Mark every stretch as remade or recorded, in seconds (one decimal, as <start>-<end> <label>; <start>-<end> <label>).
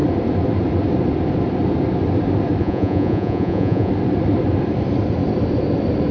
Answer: 0.0-2.6 recorded; 2.6-3.9 remade; 3.9-6.1 recorded